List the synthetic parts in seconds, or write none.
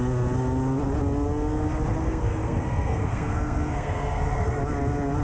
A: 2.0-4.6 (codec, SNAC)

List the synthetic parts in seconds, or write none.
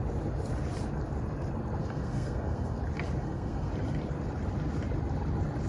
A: 1.8-2.8 (codec, SNAC); 3.2-3.7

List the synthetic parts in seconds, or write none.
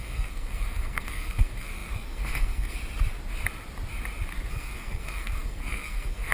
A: 0.0-2.8 (codec, SNAC); 4.5-6.3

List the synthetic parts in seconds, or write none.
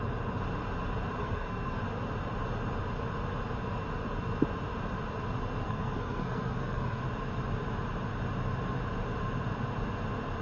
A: 1.2-1.8 (codec, SNAC); 5.6-7.0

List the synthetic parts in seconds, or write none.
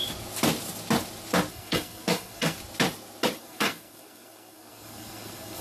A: 1.5-2.6 (codec, SNAC); 3.4-5.6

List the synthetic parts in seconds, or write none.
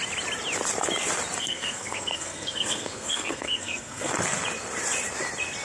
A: 1.4-4.1 (codec, SNAC)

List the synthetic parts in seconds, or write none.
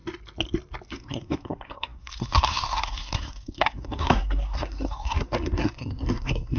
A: 0.9-6.6 (codec, SNAC)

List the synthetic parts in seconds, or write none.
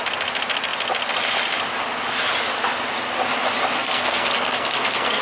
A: 3.8-5.2 (codec, SNAC)